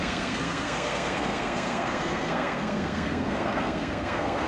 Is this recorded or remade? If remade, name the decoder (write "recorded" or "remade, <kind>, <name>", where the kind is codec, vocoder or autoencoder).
remade, codec, SNAC